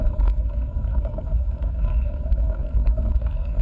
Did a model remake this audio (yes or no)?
yes